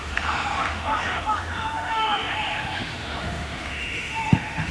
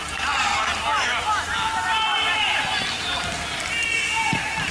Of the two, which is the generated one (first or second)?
first